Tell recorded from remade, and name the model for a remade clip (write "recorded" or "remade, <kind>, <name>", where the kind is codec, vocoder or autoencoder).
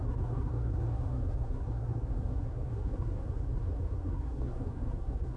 remade, codec, SNAC